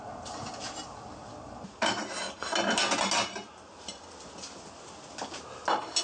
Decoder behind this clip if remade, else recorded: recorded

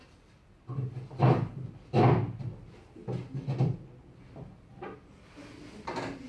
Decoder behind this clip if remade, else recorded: recorded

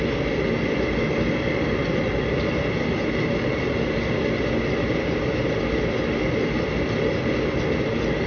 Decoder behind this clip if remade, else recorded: recorded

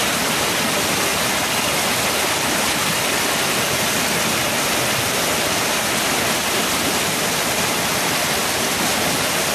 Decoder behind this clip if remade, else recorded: recorded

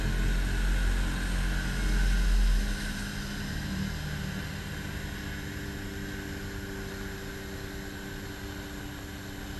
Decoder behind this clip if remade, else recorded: recorded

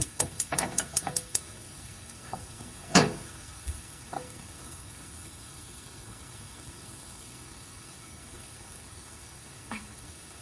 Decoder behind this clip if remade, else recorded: remade, codec, SNAC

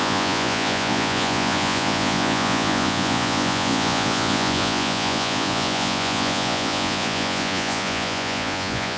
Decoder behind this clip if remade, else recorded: remade, vocoder, Vocos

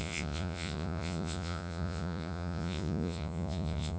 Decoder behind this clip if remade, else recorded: remade, vocoder, Vocos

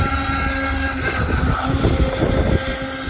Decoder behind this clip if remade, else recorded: recorded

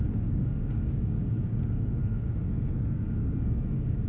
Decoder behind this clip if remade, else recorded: remade, codec, DAC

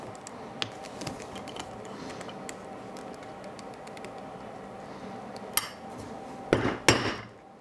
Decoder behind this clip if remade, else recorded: recorded